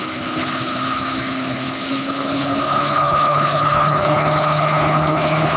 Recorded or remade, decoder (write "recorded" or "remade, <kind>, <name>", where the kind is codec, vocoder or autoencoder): remade, codec, HILCodec